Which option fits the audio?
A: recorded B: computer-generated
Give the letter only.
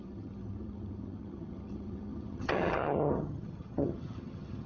B